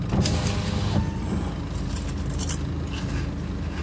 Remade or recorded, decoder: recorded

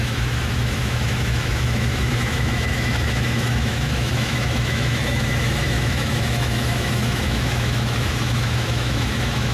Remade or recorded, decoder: remade, autoencoder, DAC-VAE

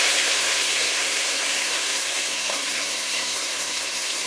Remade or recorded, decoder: remade, codec, SNAC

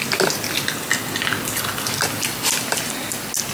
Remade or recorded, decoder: recorded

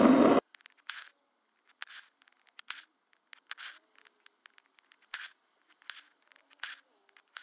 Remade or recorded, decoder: recorded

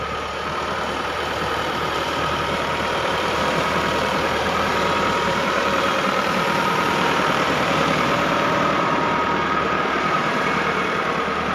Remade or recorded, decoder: remade, vocoder, BigVGAN v2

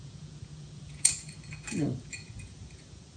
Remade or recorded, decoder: remade, vocoder, Vocos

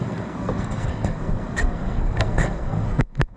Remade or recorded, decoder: remade, codec, SNAC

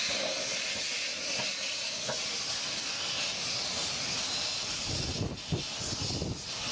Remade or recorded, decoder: recorded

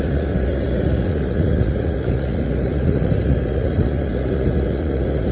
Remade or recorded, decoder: remade, vocoder, Vocos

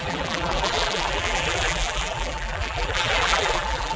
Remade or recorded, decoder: remade, vocoder, BigVGAN v2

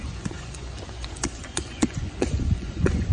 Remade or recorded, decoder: remade, vocoder, Vocos